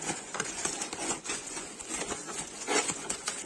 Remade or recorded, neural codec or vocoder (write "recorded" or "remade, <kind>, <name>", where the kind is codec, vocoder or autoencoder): remade, vocoder, Vocos